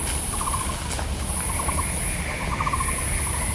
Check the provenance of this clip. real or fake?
real